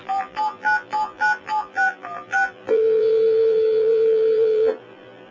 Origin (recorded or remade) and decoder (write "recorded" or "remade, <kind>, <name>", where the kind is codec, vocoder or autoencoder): remade, vocoder, BigVGAN v2